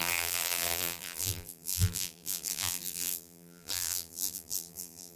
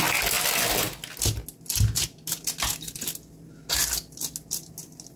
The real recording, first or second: second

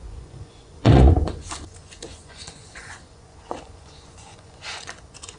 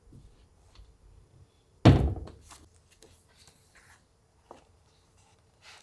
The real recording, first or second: second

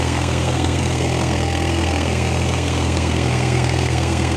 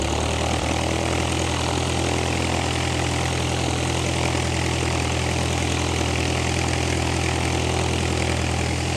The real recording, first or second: second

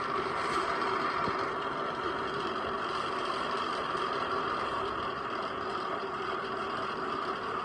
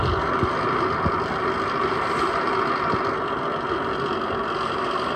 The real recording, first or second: second